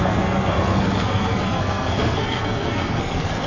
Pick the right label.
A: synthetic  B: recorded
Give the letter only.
A